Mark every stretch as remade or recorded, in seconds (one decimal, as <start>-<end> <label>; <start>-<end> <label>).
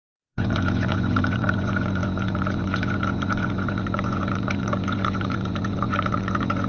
0.0-6.7 remade